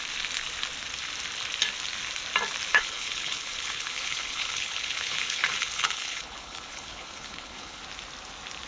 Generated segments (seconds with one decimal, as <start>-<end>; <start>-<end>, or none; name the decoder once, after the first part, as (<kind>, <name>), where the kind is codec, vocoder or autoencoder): 2.7-7.8 (codec, HILCodec)